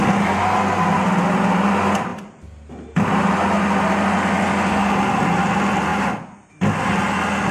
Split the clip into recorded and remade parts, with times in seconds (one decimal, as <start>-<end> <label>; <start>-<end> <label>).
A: 0.0-7.5 recorded